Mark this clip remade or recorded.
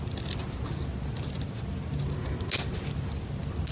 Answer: recorded